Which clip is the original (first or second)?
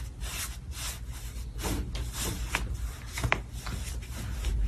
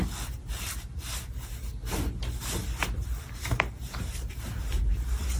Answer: first